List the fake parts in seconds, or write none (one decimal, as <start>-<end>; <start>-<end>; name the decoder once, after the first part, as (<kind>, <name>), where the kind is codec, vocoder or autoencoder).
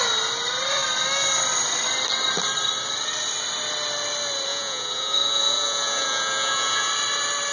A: 4.5-6.9 (vocoder, Vocos)